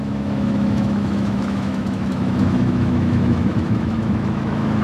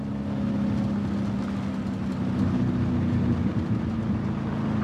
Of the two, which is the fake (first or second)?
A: first